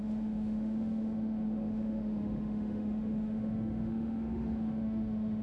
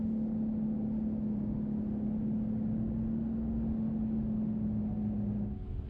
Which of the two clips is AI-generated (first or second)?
first